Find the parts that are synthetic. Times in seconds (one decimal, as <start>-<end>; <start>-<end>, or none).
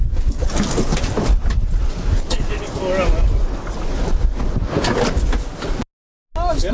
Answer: none